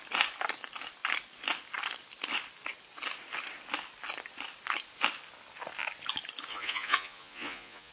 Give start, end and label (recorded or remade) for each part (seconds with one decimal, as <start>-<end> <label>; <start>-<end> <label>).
0.0-6.5 recorded; 6.5-7.9 remade